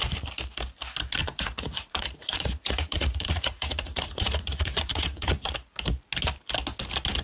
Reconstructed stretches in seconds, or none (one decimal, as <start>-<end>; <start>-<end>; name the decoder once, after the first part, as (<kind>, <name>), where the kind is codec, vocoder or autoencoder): 1.2-5.5 (vocoder, Vocos)